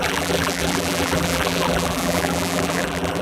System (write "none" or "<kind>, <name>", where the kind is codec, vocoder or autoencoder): vocoder, BigVGAN v2